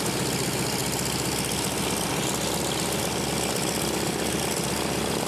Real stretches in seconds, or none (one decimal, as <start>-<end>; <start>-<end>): 0.0-5.3